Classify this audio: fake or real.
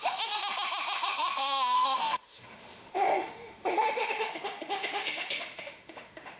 fake